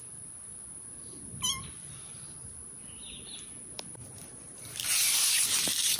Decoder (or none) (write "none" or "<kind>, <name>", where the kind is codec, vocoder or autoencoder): vocoder, BigVGAN v2